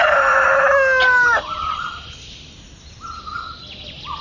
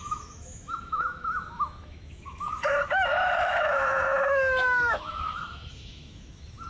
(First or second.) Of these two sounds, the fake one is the second